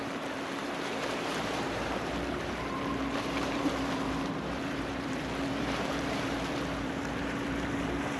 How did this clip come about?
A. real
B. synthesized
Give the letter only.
B